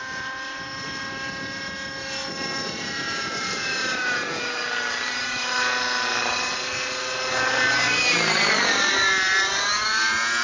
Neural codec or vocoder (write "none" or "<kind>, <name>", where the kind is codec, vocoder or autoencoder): none